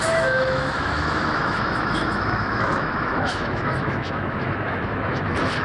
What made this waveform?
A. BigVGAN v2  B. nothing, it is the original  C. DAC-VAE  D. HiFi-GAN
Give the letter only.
C